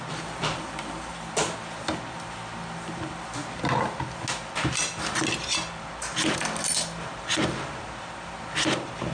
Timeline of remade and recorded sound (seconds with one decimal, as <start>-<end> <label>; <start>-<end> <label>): 0.0-9.1 recorded